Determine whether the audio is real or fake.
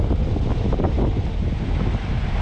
real